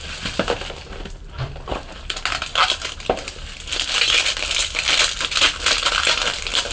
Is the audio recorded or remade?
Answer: recorded